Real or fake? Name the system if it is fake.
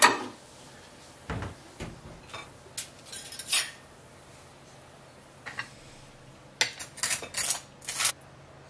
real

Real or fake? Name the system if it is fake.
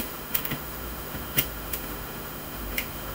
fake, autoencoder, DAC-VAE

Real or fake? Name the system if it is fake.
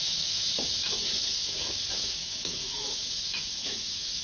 fake, autoencoder, DAC-VAE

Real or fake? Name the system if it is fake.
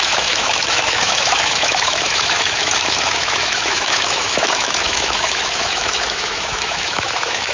fake, autoencoder, DAC-VAE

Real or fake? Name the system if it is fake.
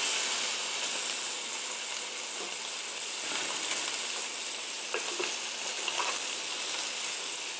real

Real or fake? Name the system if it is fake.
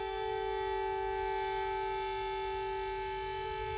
real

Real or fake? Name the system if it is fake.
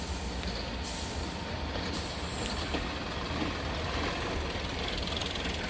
real